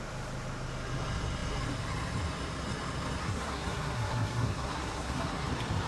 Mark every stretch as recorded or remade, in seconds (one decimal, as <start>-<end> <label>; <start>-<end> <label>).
0.0-3.2 recorded; 3.2-5.5 remade; 5.5-5.9 recorded